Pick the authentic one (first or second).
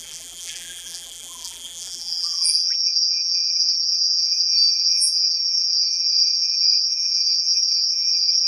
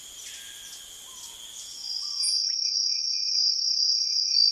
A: second